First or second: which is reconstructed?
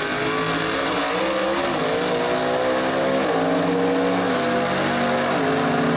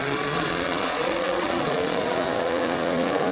second